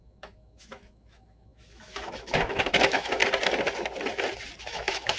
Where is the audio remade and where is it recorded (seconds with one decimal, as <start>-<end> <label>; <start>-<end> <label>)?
0.0-3.2 remade; 3.2-4.6 recorded; 4.6-5.2 remade